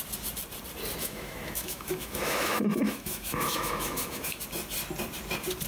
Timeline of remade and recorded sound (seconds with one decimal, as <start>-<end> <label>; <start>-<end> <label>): 0.0-1.0 recorded; 1.0-4.4 remade; 4.4-5.7 recorded